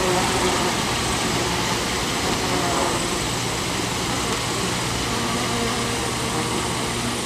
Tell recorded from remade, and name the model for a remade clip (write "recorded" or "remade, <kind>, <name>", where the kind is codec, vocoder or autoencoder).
recorded